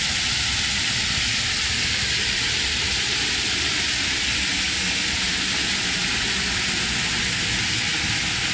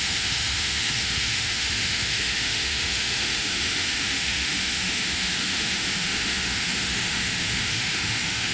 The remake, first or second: second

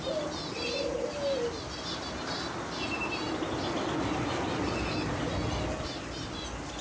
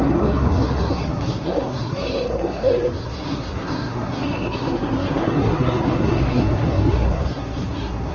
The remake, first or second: second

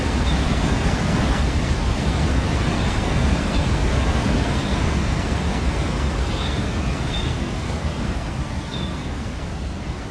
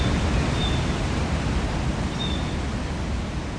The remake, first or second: first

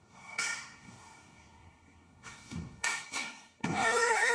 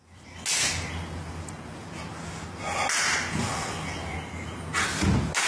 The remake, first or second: first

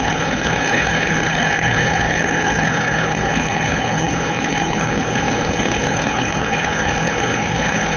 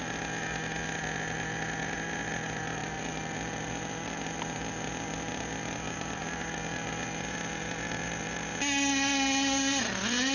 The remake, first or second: first